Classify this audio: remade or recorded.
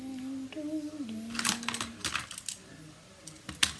recorded